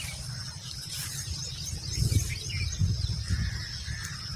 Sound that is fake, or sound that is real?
real